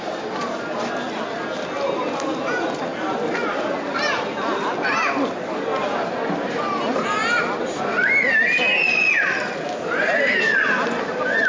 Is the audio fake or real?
real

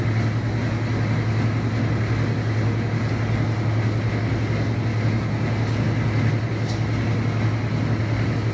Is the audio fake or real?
real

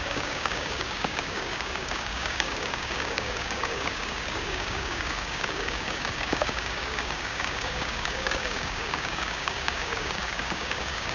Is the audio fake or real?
fake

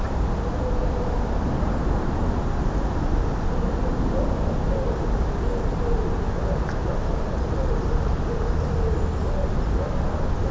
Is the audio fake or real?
real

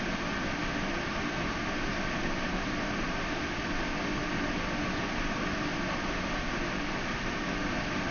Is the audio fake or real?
real